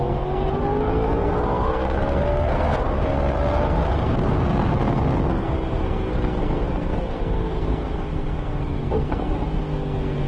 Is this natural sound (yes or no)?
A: no